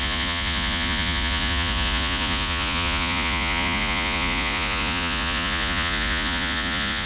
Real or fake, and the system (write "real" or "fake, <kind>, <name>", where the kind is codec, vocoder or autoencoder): fake, vocoder, Vocos